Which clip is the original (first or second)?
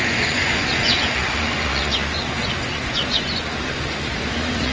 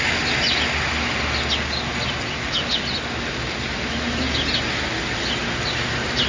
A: second